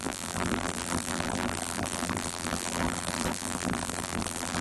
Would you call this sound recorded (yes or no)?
no